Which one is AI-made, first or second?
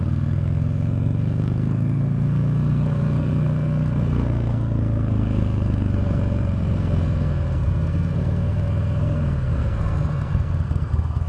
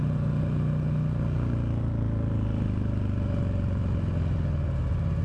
first